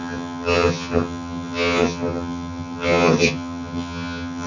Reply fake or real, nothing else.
fake